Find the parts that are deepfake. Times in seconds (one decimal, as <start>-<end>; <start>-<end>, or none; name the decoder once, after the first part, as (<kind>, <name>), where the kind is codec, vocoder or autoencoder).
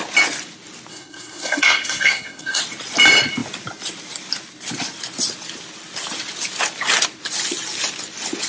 0.9-2.6 (codec, SNAC)